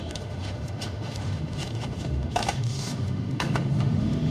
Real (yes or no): no